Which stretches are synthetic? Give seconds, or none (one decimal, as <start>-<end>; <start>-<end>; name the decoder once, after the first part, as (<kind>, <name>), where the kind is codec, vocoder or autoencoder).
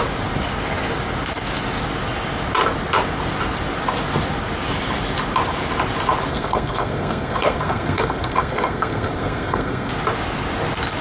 6.3-9.9 (codec, SNAC)